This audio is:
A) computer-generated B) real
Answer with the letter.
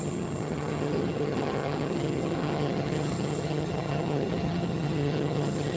A